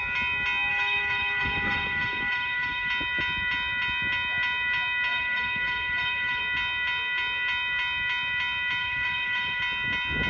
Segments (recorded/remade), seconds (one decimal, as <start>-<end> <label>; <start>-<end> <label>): 0.0-0.7 recorded; 0.7-2.9 remade; 2.9-5.1 recorded; 5.1-6.4 remade; 6.4-8.8 recorded; 8.8-9.6 remade; 9.6-10.3 recorded